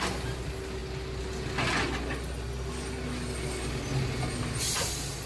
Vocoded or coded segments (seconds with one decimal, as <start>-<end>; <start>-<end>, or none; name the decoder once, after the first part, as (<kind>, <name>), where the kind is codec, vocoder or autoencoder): none